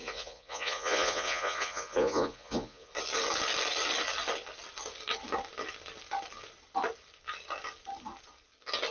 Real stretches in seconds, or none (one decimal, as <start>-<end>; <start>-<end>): 2.9-8.9